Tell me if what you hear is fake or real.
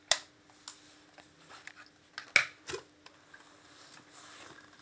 real